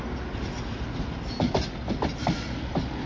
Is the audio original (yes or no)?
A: yes